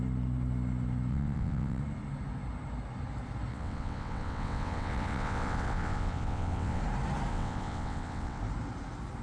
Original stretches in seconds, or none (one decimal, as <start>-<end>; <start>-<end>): 0.0-1.1; 1.8-3.5; 6.8-7.3; 8.4-9.2